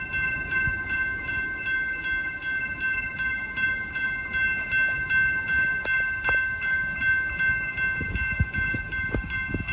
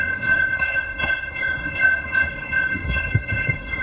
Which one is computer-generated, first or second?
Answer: second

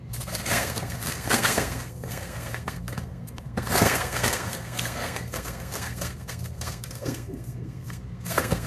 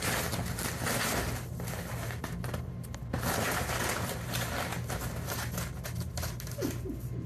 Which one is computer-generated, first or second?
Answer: first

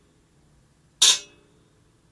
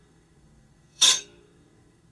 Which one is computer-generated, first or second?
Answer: second